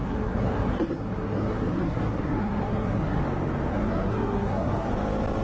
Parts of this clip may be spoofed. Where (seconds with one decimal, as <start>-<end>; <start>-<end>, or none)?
0.0-3.2; 3.7-4.9